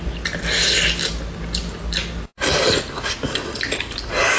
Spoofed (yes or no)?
no